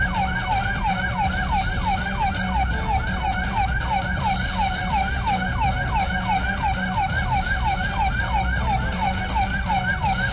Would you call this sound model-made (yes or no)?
no